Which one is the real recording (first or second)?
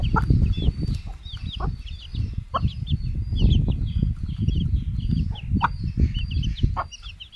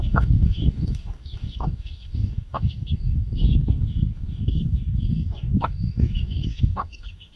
first